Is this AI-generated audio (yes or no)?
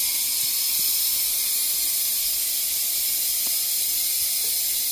no